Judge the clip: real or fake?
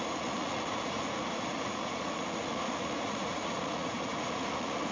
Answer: fake